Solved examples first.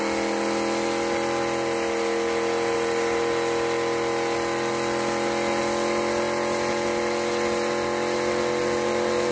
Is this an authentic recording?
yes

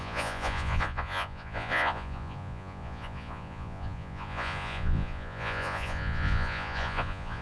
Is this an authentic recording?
no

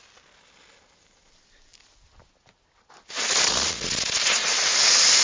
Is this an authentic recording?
yes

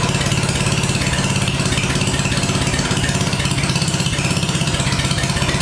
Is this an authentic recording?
yes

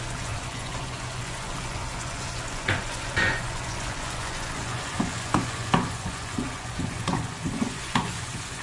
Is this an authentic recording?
no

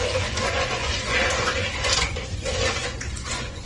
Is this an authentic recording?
no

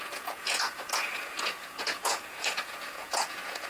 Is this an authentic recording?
no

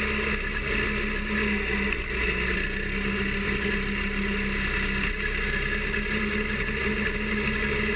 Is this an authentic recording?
yes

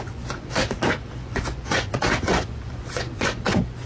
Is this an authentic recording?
no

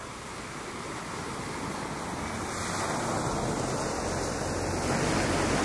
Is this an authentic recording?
yes